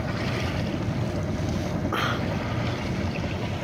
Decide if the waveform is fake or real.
real